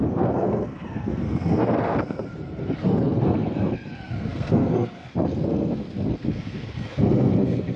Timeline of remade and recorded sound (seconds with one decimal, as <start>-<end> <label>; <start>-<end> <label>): 0.0-7.8 remade